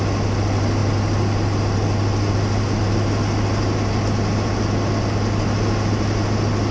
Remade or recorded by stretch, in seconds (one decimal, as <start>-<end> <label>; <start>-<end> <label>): 0.0-6.7 recorded